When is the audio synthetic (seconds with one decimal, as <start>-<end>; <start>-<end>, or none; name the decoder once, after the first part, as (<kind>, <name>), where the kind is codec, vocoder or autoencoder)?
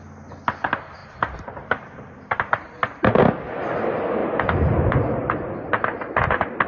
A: 1.0-2.7 (vocoder, BigVGAN v2); 4.2-5.0